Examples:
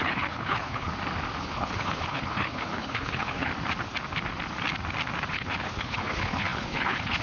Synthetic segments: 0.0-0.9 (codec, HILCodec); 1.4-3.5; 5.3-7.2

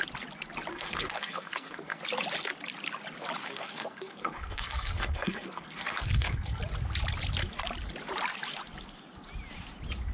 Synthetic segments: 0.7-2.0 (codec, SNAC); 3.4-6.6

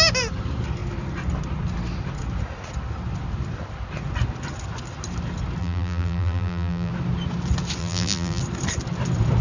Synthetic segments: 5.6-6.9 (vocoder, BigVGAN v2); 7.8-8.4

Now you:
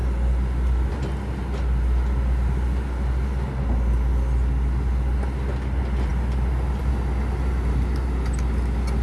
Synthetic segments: none

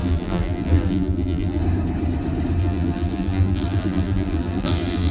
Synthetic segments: 0.0-1.6 (vocoder, BigVGAN v2); 2.6-5.1

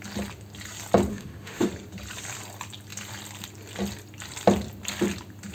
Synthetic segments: 1.1-1.7 (autoencoder, DAC-VAE)

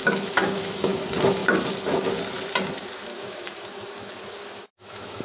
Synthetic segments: 0.0-1.0 (autoencoder, DAC-VAE); 3.1-5.2

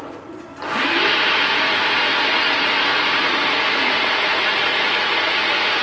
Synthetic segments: 0.0-0.5 (vocoder, Vocos); 1.1-5.8